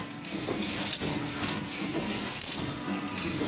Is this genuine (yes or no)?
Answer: no